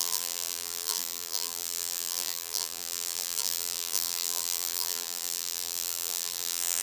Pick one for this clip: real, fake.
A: fake